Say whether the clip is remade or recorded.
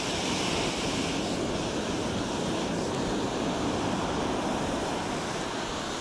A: recorded